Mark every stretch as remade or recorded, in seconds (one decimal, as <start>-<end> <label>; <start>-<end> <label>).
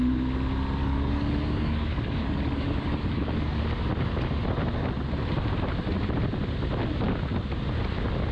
0.0-0.8 recorded; 0.8-3.6 remade; 3.6-8.3 recorded